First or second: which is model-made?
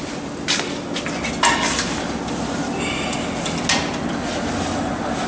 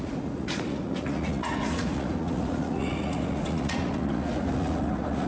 second